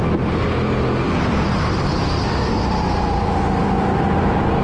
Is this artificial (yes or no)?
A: no